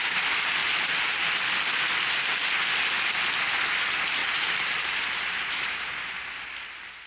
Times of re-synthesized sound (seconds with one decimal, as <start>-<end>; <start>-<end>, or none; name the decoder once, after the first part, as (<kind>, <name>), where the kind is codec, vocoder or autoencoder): 4.2-5.7 (vocoder, BigVGAN v2)